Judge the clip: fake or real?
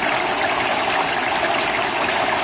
real